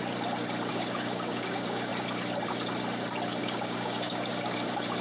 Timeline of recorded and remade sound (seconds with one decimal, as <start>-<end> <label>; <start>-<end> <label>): 0.0-0.7 recorded; 0.7-1.9 remade; 1.9-3.4 recorded; 3.4-5.0 remade